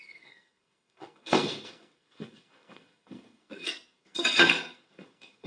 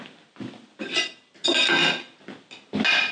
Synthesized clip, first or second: first